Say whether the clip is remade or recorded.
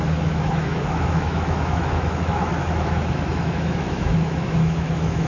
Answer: remade